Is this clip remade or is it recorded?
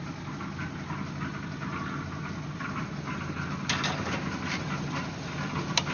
recorded